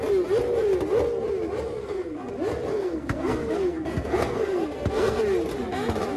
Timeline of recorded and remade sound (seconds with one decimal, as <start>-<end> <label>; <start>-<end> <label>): 0.0-1.8 recorded; 1.8-2.3 remade; 2.3-2.7 recorded; 2.7-5.2 remade; 5.2-6.2 recorded